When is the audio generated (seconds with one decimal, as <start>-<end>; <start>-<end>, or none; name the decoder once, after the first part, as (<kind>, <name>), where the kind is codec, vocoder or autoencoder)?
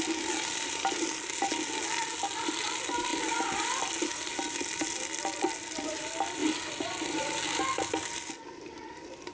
none